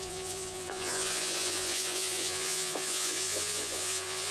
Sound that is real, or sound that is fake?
fake